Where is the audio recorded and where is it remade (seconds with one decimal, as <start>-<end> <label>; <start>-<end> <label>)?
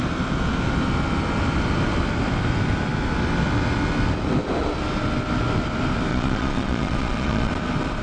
0.0-6.1 recorded; 6.1-7.5 remade; 7.5-8.0 recorded